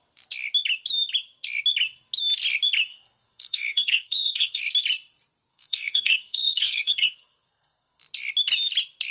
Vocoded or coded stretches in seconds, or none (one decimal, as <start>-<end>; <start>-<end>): 2.9-4.6; 5.5-8.0